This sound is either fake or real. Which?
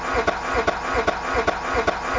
real